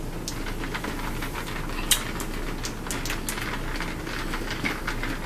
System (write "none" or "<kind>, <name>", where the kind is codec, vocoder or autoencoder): none